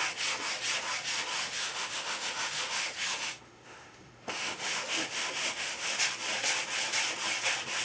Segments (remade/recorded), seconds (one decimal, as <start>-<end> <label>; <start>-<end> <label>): 0.0-1.3 recorded; 1.3-6.0 remade; 6.0-7.8 recorded